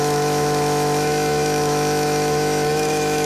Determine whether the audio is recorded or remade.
remade